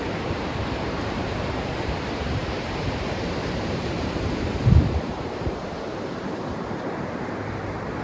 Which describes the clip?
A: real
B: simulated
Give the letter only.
B